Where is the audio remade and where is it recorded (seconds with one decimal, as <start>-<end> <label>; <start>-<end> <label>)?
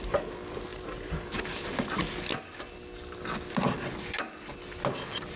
0.0-0.7 recorded; 0.7-1.7 remade; 1.7-5.4 recorded